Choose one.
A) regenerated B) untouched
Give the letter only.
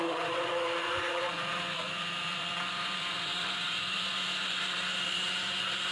A